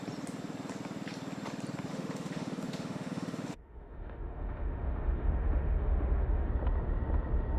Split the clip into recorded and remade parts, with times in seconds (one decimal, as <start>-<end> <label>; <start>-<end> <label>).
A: 0.0-1.9 recorded; 1.9-6.5 remade; 6.5-7.6 recorded